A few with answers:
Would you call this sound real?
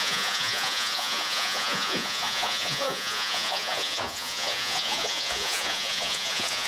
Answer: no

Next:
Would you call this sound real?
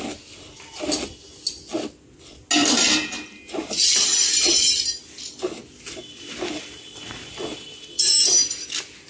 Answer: yes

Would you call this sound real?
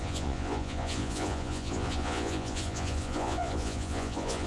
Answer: no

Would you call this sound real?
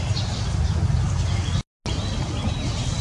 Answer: yes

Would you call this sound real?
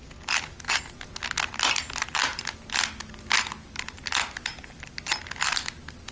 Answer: yes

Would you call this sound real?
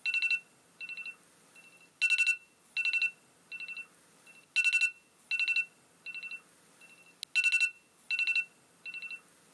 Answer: yes